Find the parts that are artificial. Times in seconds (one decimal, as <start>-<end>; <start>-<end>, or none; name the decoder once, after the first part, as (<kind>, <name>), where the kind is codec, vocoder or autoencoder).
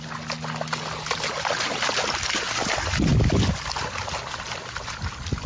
none